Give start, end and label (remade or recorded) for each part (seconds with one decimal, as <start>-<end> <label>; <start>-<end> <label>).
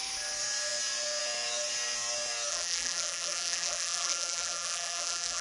0.0-2.5 recorded; 2.5-5.4 remade